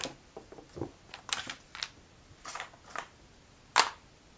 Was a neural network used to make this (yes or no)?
no